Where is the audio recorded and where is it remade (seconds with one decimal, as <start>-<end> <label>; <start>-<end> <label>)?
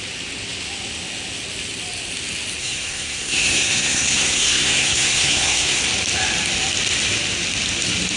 0.0-2.6 recorded; 2.6-5.8 remade; 5.8-8.2 recorded